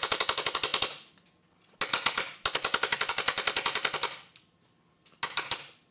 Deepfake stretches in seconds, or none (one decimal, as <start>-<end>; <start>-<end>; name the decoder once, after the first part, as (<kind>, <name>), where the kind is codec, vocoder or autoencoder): none